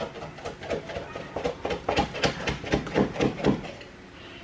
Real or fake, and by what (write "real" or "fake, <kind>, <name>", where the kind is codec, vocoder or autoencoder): real